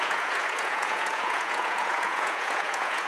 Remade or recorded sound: remade